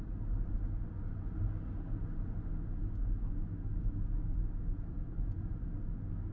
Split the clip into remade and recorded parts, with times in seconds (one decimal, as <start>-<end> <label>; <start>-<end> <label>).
0.0-6.3 recorded